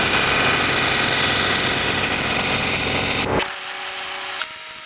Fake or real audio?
real